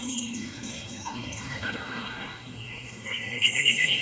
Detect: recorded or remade remade